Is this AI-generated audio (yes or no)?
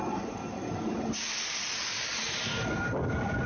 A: no